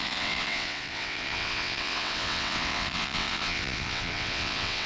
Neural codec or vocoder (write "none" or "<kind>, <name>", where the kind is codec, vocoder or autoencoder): vocoder, WaveNeXt